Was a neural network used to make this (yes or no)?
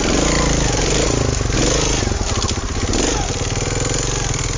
no